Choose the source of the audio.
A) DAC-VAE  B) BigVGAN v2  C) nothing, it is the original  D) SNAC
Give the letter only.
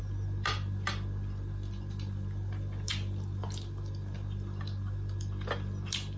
C